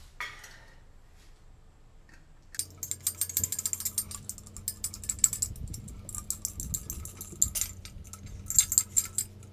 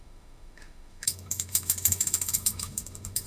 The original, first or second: first